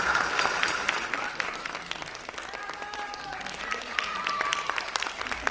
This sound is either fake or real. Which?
fake